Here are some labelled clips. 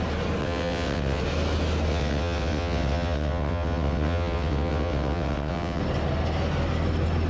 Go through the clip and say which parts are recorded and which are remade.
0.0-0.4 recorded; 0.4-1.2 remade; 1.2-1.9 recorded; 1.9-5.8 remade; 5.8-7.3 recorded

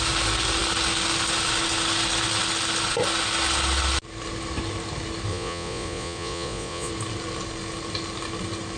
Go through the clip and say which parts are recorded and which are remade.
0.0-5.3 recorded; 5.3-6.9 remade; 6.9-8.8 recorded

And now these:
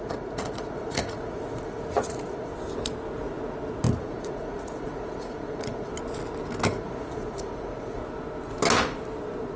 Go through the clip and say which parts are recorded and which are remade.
0.0-2.5 remade; 2.5-4.0 recorded; 4.0-5.9 remade; 5.9-6.7 recorded; 6.7-8.0 remade; 8.0-9.6 recorded

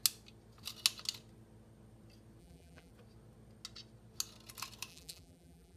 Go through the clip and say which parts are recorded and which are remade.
0.0-2.4 recorded; 2.4-2.9 remade; 2.9-4.9 recorded; 4.9-5.8 remade